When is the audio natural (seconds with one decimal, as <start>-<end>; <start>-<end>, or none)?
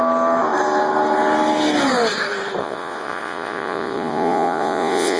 0.0-2.6